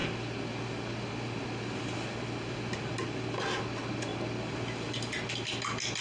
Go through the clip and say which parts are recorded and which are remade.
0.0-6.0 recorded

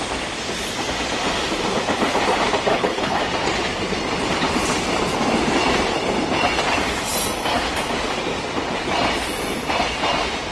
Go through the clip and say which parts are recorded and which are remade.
0.0-2.7 recorded; 2.7-3.2 remade; 3.2-10.5 recorded